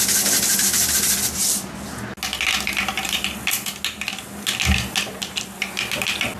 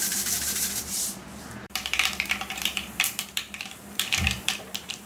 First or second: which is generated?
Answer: second